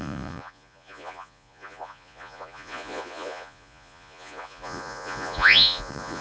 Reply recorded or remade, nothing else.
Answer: remade